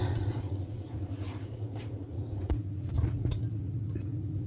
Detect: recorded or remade remade